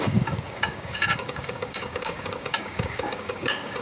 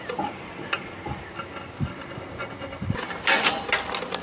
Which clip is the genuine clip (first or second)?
second